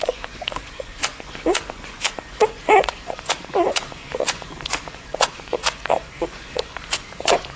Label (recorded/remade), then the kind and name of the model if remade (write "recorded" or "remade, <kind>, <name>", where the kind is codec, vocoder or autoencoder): remade, vocoder, Vocos